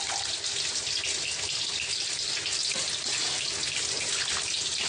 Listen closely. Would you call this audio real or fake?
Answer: real